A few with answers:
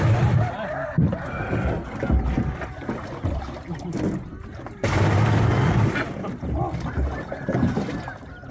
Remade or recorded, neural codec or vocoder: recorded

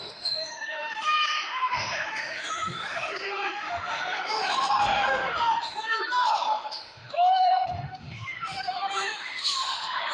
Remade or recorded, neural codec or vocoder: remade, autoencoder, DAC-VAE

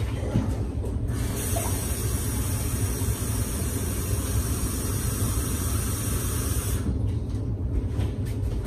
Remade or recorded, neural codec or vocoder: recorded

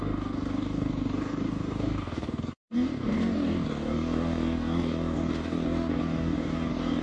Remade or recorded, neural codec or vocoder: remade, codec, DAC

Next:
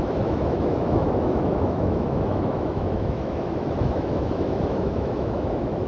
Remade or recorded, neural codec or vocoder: remade, autoencoder, DAC-VAE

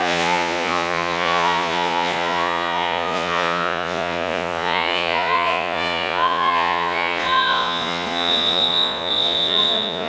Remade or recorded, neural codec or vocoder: remade, vocoder, Vocos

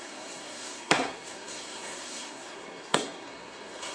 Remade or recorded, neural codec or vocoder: remade, codec, SNAC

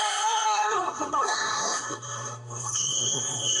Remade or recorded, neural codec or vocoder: remade, codec, SNAC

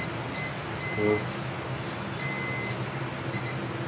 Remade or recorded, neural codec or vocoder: recorded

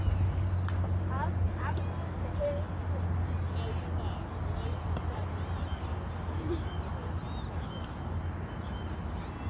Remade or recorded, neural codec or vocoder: recorded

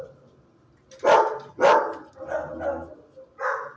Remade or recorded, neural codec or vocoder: recorded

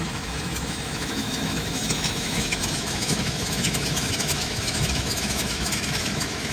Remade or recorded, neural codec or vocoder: remade, autoencoder, DAC-VAE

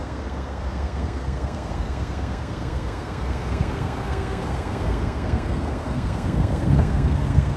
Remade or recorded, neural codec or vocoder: remade, codec, SNAC